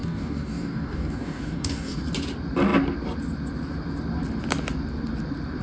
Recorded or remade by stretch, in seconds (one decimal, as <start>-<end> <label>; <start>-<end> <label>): 0.0-2.0 remade; 2.0-5.6 recorded